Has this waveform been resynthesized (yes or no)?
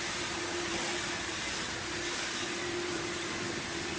no